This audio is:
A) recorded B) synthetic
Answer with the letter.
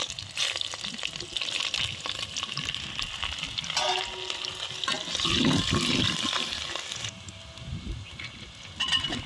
A